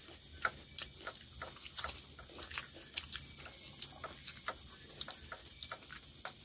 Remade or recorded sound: recorded